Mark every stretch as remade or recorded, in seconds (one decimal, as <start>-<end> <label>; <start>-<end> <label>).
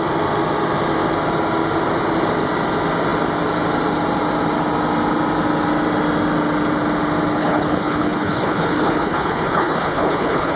0.0-7.4 recorded; 7.4-10.6 remade